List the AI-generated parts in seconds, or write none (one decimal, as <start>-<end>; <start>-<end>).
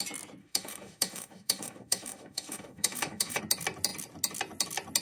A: 0.4-3.4